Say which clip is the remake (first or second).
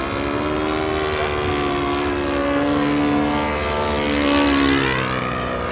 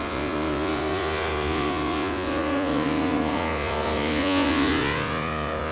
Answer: second